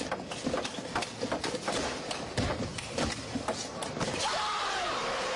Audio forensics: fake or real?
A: real